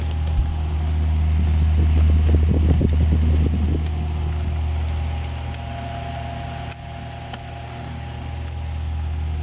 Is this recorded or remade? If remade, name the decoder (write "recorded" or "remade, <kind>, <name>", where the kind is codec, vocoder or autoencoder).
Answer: recorded